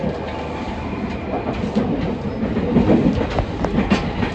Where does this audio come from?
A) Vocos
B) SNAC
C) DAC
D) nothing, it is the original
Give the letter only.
D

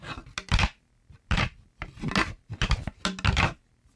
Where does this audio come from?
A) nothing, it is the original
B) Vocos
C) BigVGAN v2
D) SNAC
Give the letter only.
A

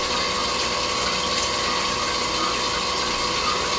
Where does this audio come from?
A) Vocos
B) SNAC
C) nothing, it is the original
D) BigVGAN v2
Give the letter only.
C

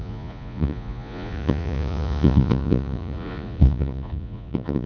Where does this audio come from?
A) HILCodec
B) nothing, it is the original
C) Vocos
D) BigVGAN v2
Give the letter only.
C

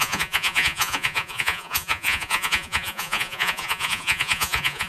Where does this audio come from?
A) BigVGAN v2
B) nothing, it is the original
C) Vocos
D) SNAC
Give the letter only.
C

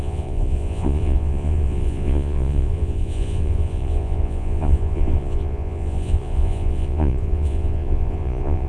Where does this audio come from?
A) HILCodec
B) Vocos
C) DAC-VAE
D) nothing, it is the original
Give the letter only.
B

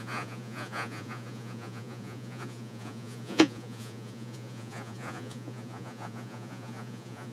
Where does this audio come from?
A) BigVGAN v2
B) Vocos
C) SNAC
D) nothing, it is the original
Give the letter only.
B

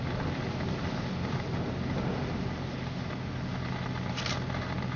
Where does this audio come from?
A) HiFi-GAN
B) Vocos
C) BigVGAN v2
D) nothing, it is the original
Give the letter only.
D